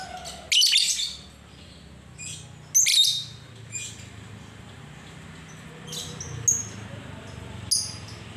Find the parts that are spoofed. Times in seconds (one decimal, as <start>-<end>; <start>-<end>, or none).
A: 2.9-5.5